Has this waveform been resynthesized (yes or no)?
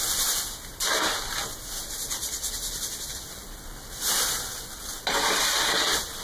no